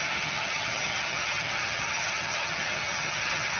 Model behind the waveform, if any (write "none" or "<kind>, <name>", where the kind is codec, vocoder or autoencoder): vocoder, HiFi-GAN